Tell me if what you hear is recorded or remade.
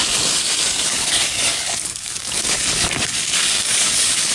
remade